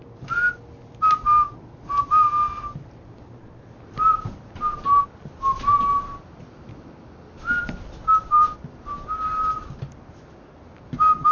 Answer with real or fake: real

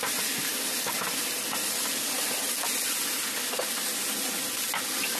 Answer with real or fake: real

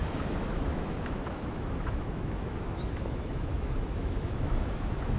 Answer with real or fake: fake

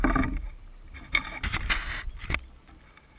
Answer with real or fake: real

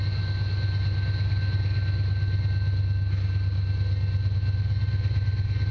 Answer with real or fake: real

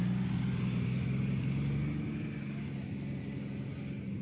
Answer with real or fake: real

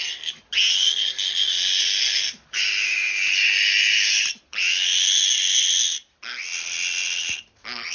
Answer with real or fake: real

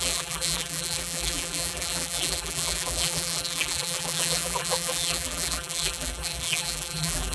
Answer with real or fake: fake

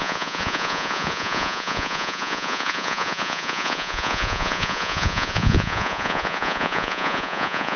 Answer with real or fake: fake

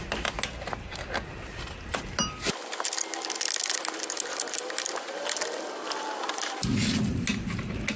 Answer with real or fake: real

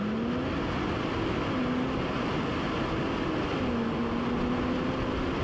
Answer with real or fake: real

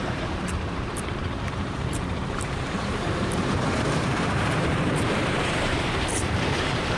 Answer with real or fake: fake